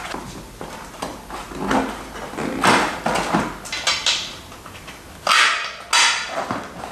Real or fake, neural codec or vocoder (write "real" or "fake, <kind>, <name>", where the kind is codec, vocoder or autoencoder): real